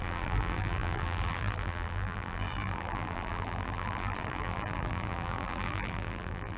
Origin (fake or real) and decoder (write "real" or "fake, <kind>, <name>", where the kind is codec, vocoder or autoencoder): fake, vocoder, BigVGAN v2